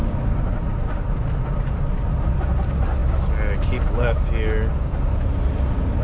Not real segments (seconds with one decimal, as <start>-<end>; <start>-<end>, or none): none